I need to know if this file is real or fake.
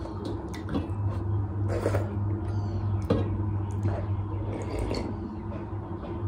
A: real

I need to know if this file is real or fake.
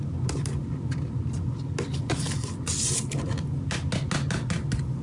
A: real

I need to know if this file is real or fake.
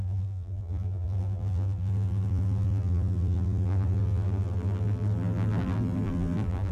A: fake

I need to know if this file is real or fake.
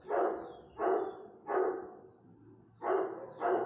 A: real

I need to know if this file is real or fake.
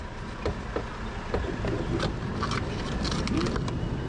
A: real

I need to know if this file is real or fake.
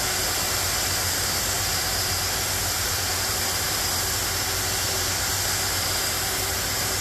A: real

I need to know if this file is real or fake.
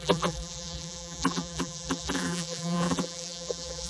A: fake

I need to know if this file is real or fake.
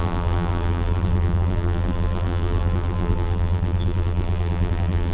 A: fake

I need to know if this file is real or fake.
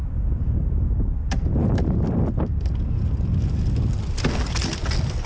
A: real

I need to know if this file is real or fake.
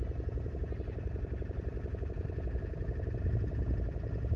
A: real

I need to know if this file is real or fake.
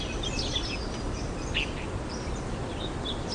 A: real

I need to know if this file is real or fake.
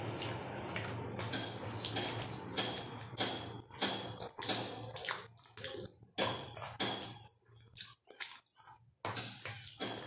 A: real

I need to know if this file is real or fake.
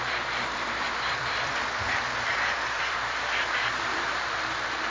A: fake